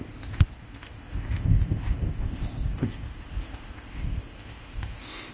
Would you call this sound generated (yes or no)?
yes